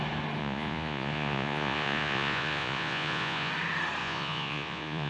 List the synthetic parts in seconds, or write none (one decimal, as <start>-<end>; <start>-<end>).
0.4-3.5; 4.0-5.1